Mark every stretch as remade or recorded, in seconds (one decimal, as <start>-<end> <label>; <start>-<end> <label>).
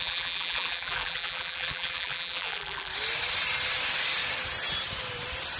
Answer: 0.0-2.9 remade; 2.9-5.6 recorded